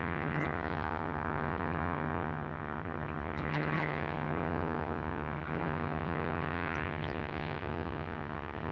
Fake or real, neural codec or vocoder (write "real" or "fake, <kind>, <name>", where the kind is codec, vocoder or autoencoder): fake, vocoder, HiFi-GAN